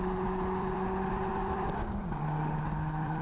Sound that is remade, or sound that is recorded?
remade